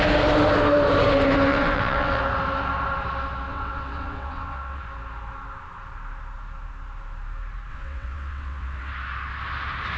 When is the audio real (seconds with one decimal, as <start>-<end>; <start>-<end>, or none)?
0.0-1.5; 2.2-3.5; 4.8-7.7; 8.9-10.0